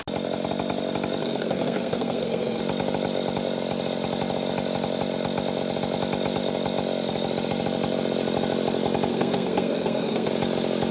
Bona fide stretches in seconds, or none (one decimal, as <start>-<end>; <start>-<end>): 0.0-1.2; 2.6-9.1; 10.3-10.9